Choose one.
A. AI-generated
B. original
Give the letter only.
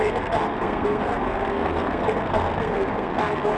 A